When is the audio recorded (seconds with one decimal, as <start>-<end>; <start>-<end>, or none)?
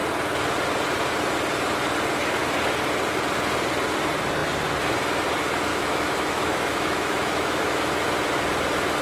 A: 0.0-5.7; 7.9-9.0